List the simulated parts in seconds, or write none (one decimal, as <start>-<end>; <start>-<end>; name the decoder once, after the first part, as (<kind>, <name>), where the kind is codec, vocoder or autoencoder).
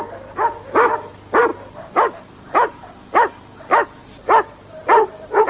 none